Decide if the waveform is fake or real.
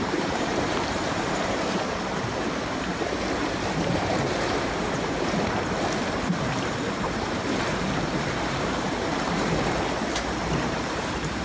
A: fake